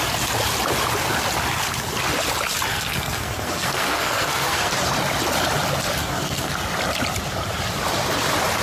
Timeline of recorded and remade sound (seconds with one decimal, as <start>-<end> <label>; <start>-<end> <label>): 0.0-2.7 recorded; 2.7-4.7 remade; 4.7-6.0 recorded; 6.0-6.5 remade; 6.5-8.6 recorded